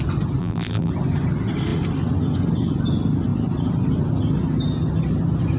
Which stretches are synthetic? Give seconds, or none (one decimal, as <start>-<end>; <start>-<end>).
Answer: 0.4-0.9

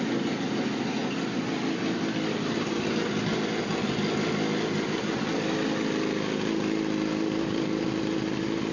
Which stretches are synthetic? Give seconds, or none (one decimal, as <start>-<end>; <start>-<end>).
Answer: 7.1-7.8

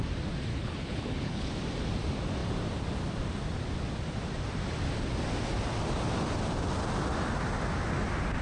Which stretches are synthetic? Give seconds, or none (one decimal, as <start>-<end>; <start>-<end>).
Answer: 0.5-1.5